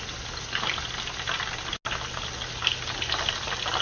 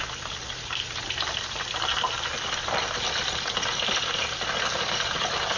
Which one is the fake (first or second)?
second